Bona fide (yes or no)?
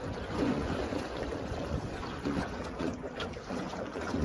no